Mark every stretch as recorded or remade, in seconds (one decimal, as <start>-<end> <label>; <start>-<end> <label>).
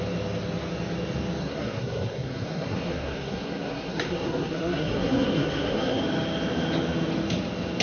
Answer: 0.0-1.4 recorded; 1.4-6.0 remade; 6.0-7.8 recorded